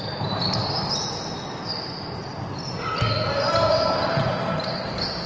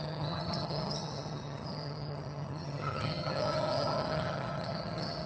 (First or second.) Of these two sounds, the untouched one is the first